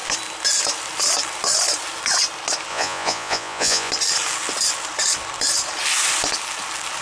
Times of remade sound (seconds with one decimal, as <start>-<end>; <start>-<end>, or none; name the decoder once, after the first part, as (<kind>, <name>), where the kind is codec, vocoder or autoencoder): 2.7-3.9 (vocoder, Vocos)